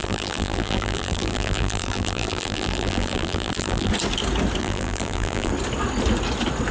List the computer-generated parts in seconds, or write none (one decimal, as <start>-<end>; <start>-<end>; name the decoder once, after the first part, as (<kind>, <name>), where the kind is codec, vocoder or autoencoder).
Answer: 0.0-3.9 (vocoder, BigVGAN v2); 4.6-5.5